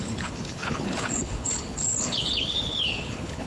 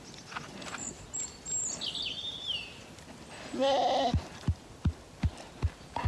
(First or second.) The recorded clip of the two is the second